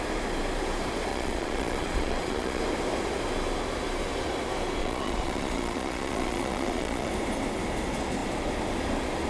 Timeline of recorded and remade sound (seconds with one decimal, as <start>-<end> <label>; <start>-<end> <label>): 0.0-1.1 recorded; 1.1-2.6 remade; 2.6-4.8 recorded; 4.8-7.1 remade; 7.1-9.3 recorded